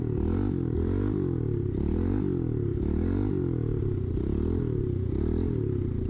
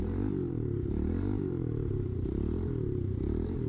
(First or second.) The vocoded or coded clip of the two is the second